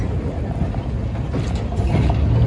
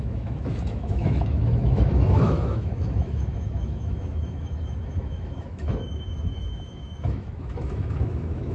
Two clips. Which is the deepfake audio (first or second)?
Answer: second